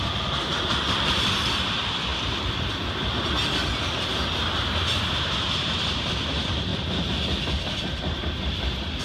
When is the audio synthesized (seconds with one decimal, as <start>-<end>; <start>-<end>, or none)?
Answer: 0.0-2.1; 5.3-6.7; 7.7-9.0